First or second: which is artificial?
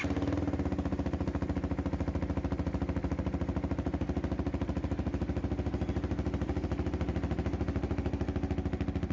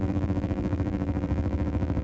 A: second